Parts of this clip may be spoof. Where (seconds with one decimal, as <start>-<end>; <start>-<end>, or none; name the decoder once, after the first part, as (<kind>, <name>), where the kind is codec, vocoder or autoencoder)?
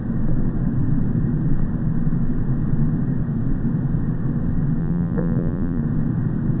4.8-5.8 (vocoder, BigVGAN v2)